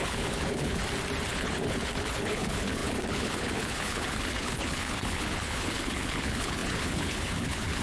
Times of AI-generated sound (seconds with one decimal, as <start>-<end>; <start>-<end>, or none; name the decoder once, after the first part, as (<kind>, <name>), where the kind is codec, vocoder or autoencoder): 0.0-0.8 (codec, HILCodec); 1.3-7.8